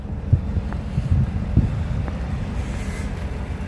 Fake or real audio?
real